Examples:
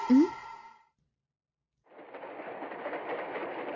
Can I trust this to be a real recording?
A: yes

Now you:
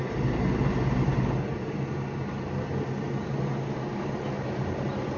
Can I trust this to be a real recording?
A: yes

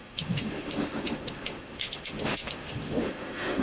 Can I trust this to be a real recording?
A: no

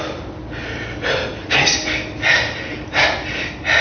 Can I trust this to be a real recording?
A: yes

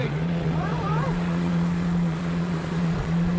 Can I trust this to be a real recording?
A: no